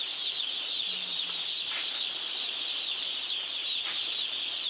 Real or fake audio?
real